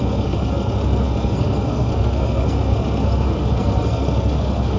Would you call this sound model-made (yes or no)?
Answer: yes